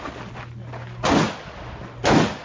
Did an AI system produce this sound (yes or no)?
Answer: no